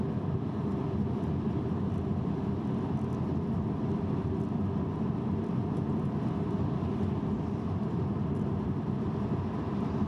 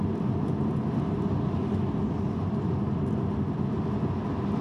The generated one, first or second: first